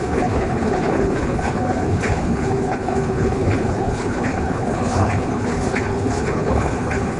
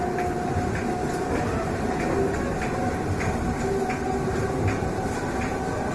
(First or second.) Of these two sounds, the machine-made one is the first